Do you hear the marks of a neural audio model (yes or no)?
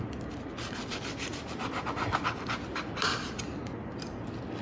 no